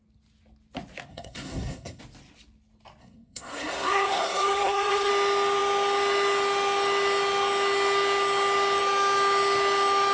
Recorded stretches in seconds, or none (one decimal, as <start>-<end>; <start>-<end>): 0.0-1.1; 2.0-3.0; 5.1-10.1